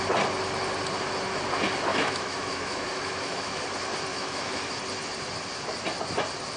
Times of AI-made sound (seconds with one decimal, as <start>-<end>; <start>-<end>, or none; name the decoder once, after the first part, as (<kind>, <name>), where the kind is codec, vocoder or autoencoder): 1.9-3.6 (autoencoder, DAC-VAE); 4.1-4.7